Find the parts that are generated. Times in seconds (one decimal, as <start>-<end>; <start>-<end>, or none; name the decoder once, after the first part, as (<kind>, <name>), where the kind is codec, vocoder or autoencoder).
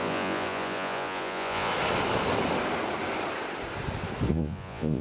0.0-1.7 (vocoder, Vocos); 4.3-5.0